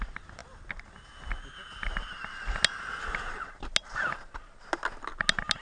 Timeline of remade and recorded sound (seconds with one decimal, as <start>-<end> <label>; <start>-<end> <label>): 0.0-5.6 recorded